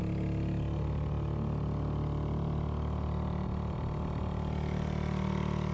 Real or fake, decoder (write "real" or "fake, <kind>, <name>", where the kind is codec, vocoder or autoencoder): real